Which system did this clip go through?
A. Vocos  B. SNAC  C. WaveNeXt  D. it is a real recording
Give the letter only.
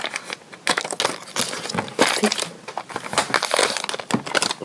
D